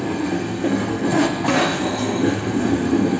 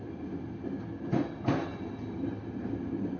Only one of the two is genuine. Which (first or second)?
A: second